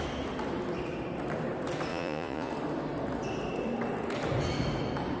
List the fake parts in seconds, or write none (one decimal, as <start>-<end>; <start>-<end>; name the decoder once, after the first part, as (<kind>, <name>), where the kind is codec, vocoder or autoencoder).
1.9-2.5 (vocoder, Vocos)